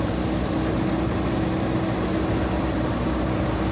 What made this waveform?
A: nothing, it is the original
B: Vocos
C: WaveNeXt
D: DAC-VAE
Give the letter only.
A